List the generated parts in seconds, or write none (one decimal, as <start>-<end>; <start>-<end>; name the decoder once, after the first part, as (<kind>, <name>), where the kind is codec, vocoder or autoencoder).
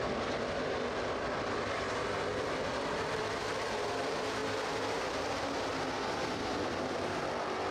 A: 0.0-5.7 (vocoder, BigVGAN v2); 6.7-7.7